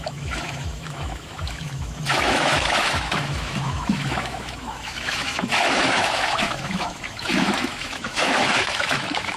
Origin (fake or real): fake